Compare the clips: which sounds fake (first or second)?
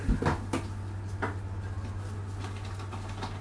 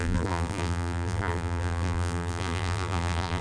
second